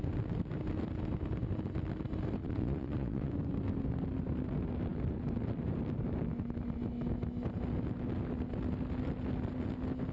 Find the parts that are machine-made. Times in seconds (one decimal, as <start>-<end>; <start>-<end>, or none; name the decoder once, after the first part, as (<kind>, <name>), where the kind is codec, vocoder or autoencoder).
2.4-3.3 (vocoder, Vocos)